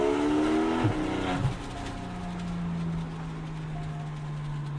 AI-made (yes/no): no